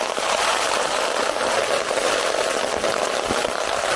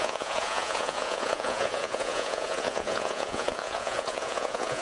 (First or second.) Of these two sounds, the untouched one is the first